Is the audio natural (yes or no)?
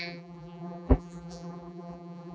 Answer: no